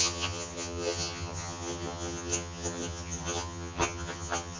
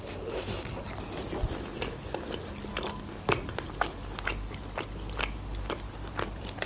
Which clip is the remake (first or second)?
first